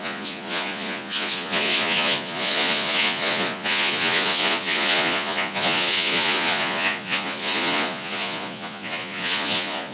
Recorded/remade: remade